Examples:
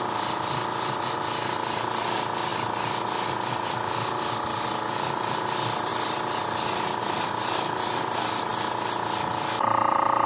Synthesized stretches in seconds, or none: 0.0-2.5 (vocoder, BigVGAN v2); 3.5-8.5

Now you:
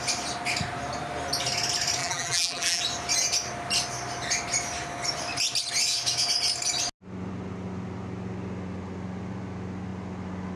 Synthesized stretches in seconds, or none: 2.0-2.8 (vocoder, BigVGAN v2)

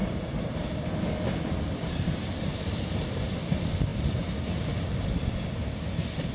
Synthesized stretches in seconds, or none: 0.0-0.9 (vocoder, BigVGAN v2); 1.8-3.5

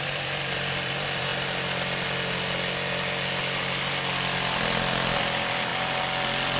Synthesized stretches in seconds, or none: 0.0-1.3 (vocoder, BigVGAN v2); 4.6-5.7

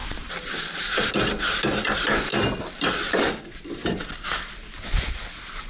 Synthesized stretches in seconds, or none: 0.0-1.1 (vocoder, BigVGAN v2); 2.3-5.7